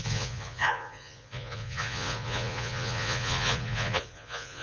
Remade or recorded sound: remade